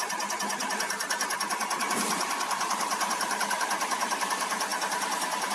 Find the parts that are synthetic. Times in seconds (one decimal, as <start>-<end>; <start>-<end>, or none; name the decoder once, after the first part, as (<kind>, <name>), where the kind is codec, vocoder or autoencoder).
0.0-4.7 (vocoder, BigVGAN v2)